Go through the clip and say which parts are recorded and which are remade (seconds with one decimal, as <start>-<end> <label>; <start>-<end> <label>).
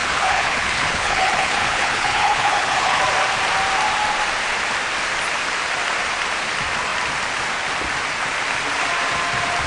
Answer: 0.0-3.0 remade; 3.0-9.7 recorded